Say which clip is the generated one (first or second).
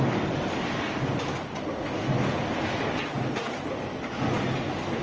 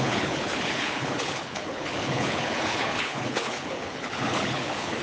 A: second